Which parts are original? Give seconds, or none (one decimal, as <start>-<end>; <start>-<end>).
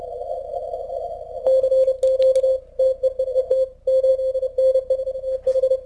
0.0-5.9